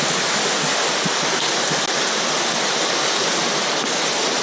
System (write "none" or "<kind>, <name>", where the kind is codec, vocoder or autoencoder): none